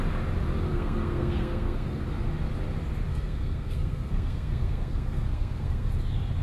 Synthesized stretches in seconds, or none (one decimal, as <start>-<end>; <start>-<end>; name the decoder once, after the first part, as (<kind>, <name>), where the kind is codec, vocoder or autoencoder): 0.7-2.0 (codec, SNAC); 3.1-5.9